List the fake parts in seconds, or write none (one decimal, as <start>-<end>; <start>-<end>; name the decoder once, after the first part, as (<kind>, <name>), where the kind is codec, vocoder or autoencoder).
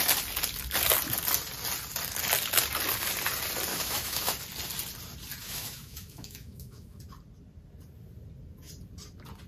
3.7-4.3 (autoencoder, DAC-VAE); 5.4-7.0